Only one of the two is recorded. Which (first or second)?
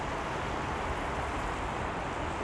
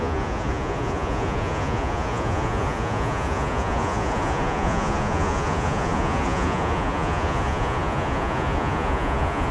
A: first